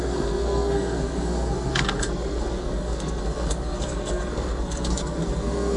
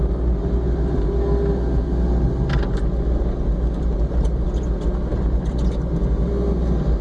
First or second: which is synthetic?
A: first